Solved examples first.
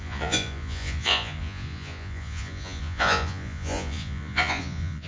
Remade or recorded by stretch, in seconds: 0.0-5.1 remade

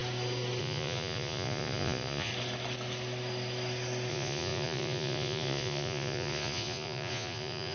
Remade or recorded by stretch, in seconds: 0.0-0.6 recorded; 0.6-2.3 remade; 2.3-4.1 recorded; 4.1-7.7 remade

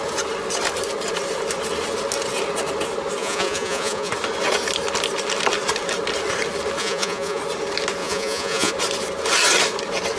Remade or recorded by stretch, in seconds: 0.0-3.2 recorded; 3.2-4.1 remade; 4.1-6.8 recorded; 6.8-7.4 remade; 7.4-8.0 recorded; 8.0-8.7 remade; 8.7-10.2 recorded

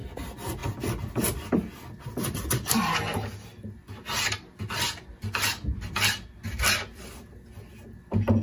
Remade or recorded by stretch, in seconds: 0.0-8.4 recorded

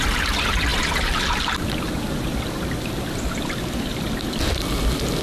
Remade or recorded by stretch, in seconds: 0.0-5.2 recorded